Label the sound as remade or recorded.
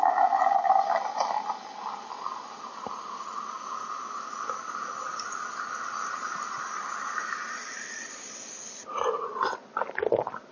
recorded